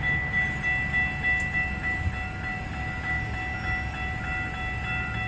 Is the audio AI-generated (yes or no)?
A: no